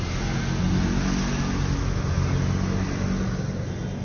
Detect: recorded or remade recorded